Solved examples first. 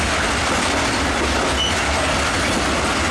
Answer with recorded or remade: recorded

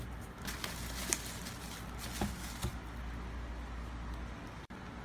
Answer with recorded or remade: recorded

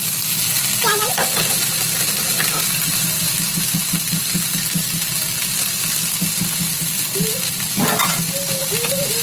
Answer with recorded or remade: recorded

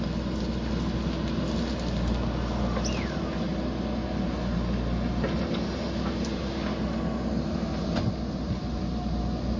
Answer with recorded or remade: recorded